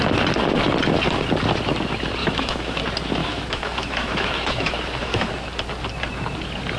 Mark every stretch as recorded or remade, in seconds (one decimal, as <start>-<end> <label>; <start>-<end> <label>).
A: 0.0-2.2 recorded; 2.2-2.8 remade; 2.8-3.2 recorded; 3.2-5.3 remade; 5.3-6.8 recorded